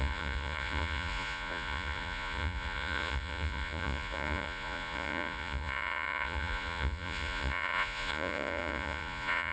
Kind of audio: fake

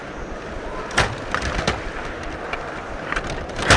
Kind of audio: real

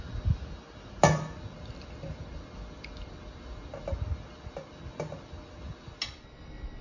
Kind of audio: real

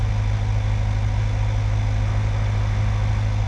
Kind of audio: real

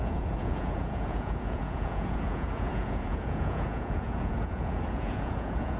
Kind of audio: fake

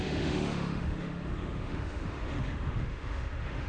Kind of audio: fake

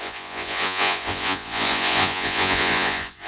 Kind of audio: fake